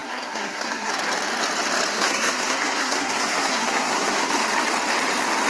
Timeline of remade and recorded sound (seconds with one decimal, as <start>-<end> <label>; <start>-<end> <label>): 0.0-0.9 remade; 0.9-1.9 recorded; 1.9-4.3 remade; 4.3-5.5 recorded